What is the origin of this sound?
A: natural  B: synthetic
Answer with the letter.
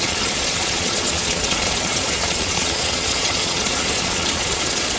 B